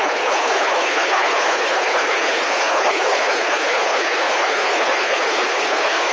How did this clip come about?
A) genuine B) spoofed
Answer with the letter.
B